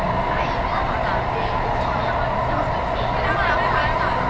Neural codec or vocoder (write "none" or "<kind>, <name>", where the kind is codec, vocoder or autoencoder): none